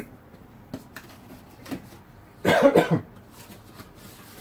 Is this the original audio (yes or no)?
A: yes